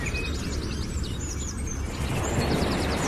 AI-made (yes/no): no